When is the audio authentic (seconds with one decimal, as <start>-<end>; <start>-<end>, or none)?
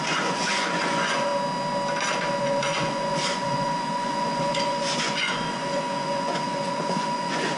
1.3-2.4